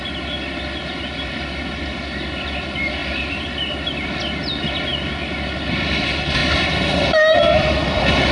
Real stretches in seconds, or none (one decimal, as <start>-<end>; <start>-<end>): 0.0-8.3